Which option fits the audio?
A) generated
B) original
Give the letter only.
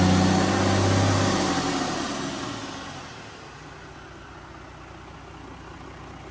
B